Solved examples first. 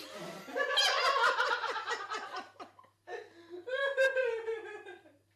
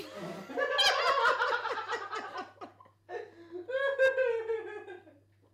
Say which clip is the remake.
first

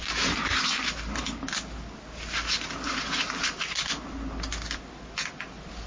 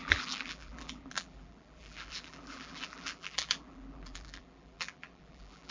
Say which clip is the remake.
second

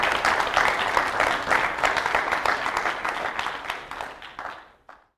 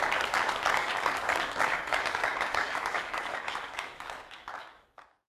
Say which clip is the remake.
second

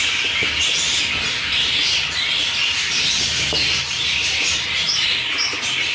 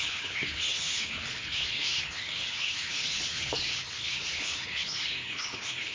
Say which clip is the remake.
second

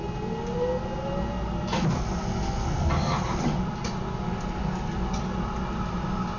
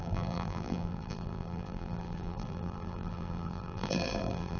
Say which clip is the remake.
second